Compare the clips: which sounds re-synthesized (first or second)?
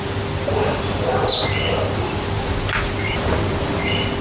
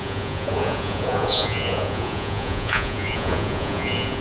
second